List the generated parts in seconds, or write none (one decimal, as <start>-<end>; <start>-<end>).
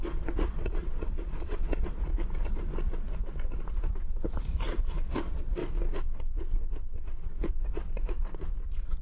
0.0-2.1; 3.6-5.6; 7.4-9.0